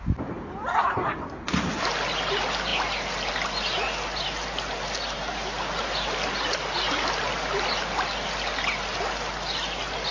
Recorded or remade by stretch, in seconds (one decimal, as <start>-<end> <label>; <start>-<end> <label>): 0.0-10.1 recorded